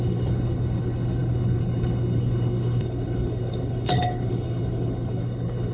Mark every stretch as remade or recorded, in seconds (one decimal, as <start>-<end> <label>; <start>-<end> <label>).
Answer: 0.0-5.7 remade